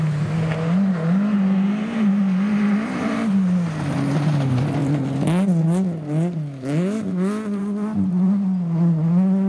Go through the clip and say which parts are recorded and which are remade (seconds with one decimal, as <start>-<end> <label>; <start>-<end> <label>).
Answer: 0.0-9.5 recorded